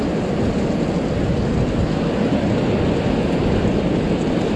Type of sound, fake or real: real